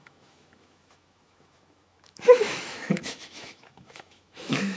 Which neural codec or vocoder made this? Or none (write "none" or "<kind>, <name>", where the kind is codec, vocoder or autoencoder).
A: autoencoder, DAC-VAE